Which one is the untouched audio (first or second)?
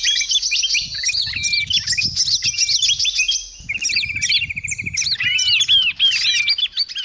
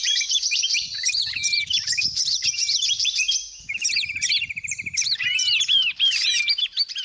first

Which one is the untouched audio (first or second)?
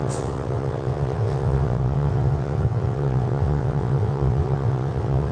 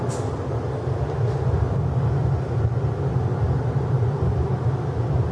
second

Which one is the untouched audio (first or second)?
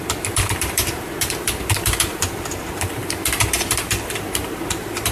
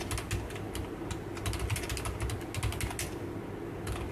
second